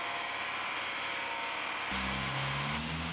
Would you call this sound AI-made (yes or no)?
no